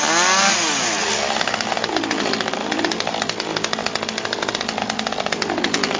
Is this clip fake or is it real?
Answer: real